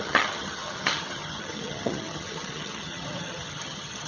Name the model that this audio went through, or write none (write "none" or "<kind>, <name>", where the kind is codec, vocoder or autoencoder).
vocoder, HiFi-GAN